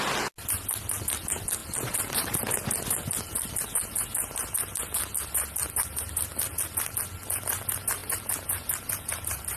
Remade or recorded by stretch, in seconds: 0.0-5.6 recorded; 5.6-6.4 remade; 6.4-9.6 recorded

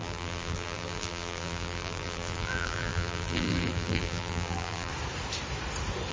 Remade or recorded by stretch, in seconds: 0.0-4.9 remade; 4.9-6.1 recorded

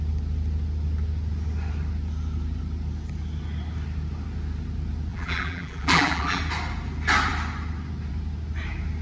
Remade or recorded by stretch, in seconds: 0.0-5.1 recorded; 5.1-6.4 remade; 6.4-9.0 recorded

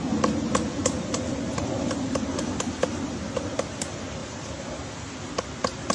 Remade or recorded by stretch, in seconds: 0.0-0.8 recorded; 0.8-2.9 remade; 2.9-4.2 recorded; 4.2-4.7 remade; 4.7-5.9 recorded